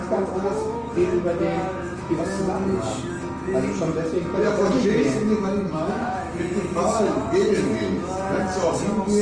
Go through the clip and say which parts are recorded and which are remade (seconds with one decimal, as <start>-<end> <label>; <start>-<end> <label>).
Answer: 0.0-2.4 remade; 2.4-4.4 recorded; 4.4-8.1 remade; 8.1-9.2 recorded